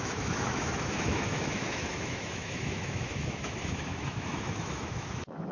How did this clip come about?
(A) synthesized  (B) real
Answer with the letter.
A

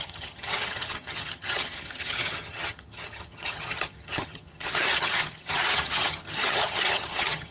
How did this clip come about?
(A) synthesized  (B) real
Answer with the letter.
A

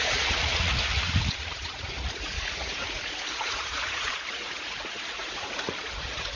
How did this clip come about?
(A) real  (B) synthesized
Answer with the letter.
B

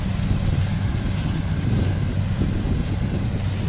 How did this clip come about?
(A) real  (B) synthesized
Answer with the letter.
A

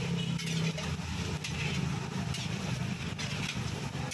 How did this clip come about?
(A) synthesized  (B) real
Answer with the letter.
B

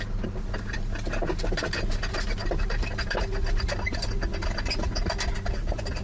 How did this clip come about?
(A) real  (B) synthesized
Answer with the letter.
A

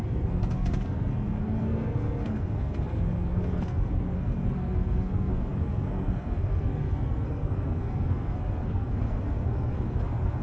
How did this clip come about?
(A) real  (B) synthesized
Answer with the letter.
B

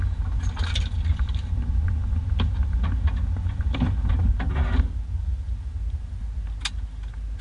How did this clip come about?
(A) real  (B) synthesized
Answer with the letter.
A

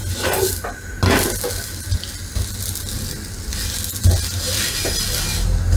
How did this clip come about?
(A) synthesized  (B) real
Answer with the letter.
B